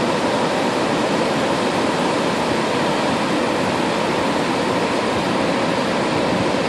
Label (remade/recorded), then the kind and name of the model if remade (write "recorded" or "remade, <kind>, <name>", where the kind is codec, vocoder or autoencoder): recorded